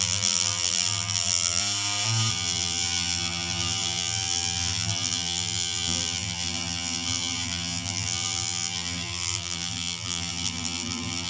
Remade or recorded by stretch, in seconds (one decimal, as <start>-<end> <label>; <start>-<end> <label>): 0.0-1.6 remade; 1.6-2.3 recorded; 2.3-11.3 remade